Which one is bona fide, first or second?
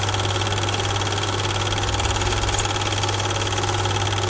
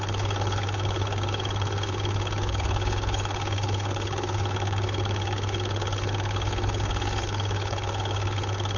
first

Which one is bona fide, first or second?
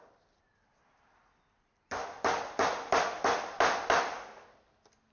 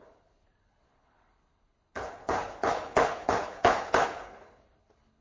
first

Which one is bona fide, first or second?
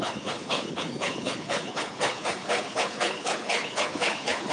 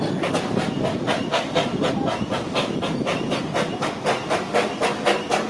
second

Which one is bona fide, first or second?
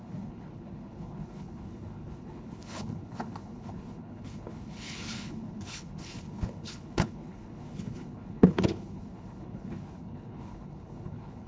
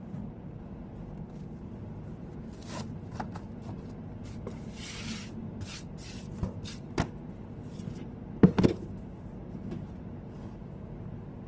second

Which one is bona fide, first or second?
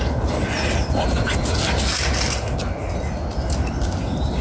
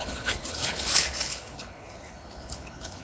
first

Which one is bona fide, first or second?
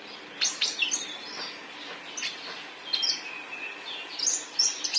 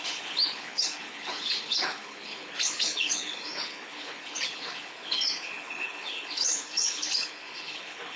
first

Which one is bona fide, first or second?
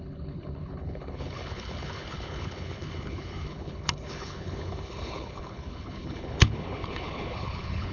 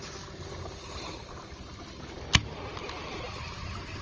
second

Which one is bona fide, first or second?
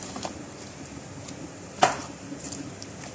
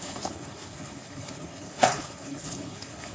first